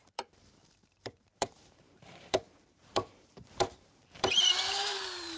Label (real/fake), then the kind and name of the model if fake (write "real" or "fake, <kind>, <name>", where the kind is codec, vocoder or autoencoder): fake, vocoder, BigVGAN v2